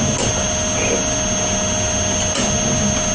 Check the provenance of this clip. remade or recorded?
recorded